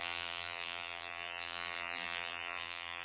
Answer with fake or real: fake